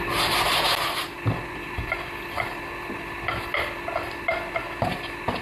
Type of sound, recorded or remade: recorded